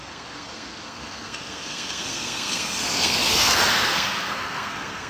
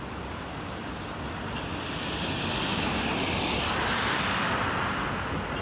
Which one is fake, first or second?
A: first